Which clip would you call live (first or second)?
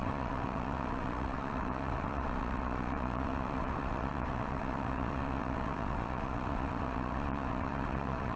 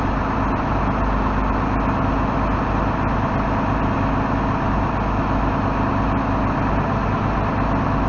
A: second